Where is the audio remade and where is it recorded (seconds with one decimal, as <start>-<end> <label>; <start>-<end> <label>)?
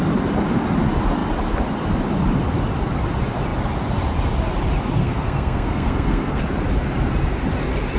0.0-5.0 recorded; 5.0-6.4 remade; 6.4-8.0 recorded